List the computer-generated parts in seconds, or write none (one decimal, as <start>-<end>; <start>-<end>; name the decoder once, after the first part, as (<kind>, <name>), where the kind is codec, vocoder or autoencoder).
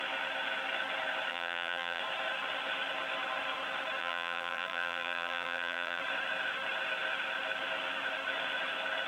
1.3-2.0 (vocoder, BigVGAN v2); 4.0-6.0